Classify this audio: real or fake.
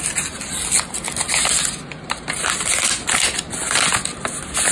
real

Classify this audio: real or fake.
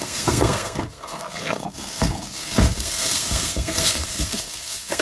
fake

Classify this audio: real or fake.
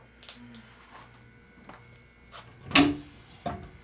real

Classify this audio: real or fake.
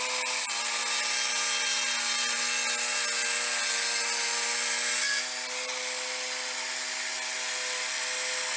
real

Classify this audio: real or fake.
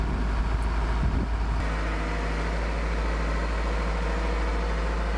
real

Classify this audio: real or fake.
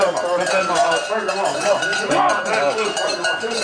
fake